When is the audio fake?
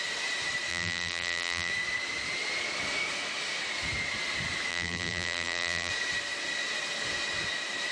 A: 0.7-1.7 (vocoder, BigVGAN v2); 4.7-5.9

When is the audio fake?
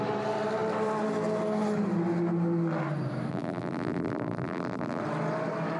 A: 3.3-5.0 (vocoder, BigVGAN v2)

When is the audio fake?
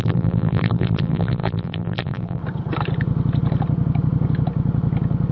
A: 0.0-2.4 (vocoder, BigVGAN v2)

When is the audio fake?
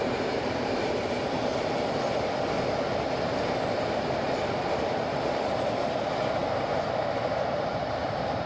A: 0.0-1.5 (vocoder, BigVGAN v2); 4.9-6.4; 7.2-8.5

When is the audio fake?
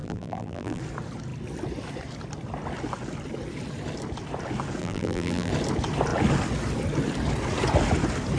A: 0.0-0.8 (vocoder, BigVGAN v2); 4.8-5.5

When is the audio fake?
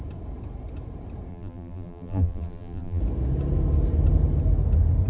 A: 1.3-3.0 (vocoder, BigVGAN v2)